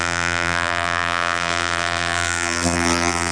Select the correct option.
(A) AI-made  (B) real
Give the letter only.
A